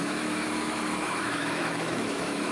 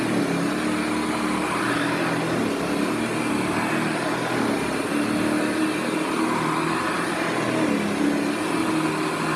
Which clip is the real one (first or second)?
second